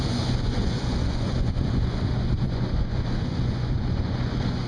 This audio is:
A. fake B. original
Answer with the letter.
A